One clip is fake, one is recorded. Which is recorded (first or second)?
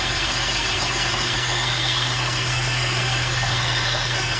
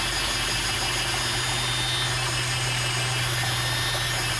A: second